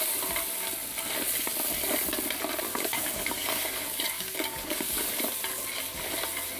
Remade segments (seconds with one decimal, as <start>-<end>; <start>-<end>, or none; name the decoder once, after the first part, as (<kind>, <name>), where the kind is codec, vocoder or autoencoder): 2.7-5.1 (codec, DAC)